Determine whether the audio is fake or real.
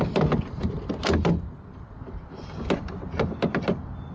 real